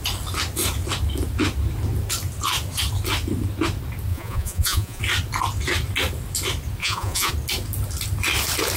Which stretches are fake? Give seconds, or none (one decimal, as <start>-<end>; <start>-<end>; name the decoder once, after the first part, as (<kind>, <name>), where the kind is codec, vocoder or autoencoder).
4.1-5.0 (vocoder, Vocos); 6.8-7.3

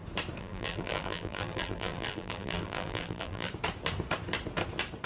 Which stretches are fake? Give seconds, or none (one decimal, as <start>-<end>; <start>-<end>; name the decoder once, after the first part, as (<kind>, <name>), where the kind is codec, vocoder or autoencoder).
0.4-3.5 (vocoder, BigVGAN v2)

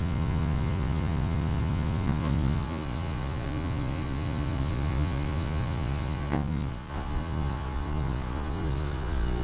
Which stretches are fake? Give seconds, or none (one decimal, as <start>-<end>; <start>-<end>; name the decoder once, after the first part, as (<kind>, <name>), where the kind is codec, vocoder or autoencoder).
0.0-9.4 (vocoder, Vocos)

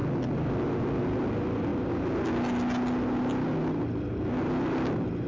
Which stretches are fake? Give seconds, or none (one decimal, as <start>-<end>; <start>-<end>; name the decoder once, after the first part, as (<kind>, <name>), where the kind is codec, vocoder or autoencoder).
none

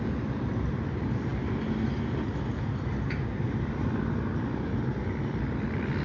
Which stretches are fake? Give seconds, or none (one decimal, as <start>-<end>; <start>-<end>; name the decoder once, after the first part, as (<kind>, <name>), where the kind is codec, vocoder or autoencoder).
none